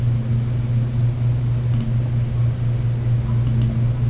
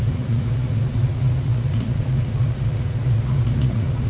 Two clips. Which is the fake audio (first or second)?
second